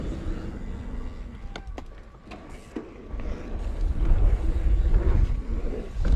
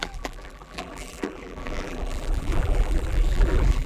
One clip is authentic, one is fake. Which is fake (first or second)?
second